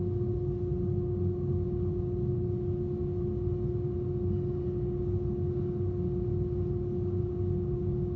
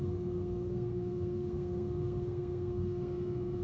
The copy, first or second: second